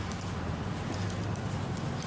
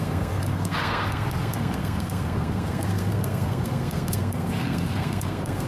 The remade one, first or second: second